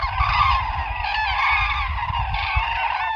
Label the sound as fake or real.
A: real